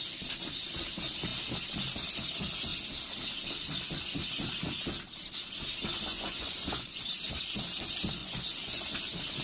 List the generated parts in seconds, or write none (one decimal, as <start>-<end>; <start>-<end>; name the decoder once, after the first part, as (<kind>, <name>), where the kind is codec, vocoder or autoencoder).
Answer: 6.1-7.0 (vocoder, Vocos); 8.2-9.0